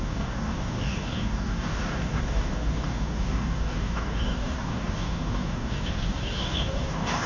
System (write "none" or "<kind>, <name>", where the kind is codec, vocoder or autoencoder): codec, DAC